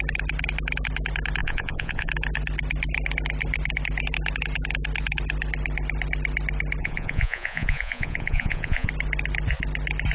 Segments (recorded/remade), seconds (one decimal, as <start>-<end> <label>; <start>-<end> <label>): 0.0-1.4 recorded; 1.4-2.1 remade; 2.1-6.8 recorded; 6.8-8.9 remade; 8.9-10.1 recorded